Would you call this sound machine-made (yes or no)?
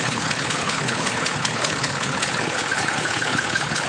yes